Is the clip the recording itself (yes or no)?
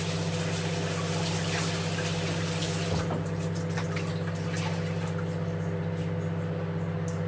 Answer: yes